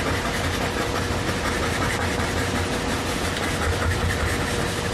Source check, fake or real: real